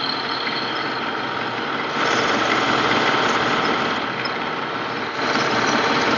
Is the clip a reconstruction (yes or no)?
no